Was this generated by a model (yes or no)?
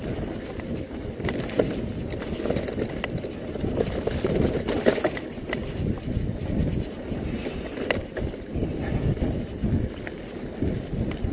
no